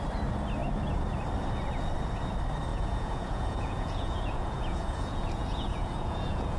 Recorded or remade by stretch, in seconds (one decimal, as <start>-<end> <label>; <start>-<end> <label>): 0.0-2.7 recorded; 2.7-6.6 remade